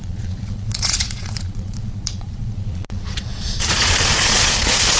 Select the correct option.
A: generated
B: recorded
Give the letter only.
A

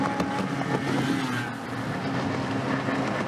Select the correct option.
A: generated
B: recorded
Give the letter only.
B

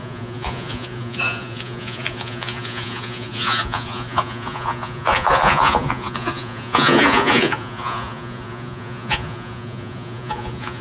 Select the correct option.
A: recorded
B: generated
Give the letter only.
B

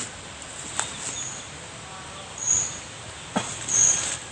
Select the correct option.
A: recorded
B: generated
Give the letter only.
A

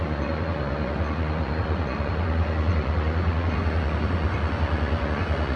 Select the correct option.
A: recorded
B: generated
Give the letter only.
B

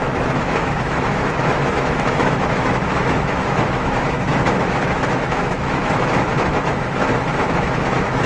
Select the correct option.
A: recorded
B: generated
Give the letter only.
B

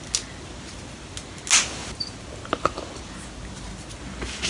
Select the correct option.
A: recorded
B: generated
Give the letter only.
A